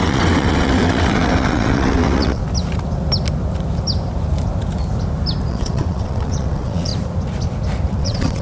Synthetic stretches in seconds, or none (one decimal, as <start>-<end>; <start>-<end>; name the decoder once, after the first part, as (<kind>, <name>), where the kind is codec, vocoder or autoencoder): 0.0-2.4 (vocoder, WaveNeXt); 5.5-6.9; 8.0-8.4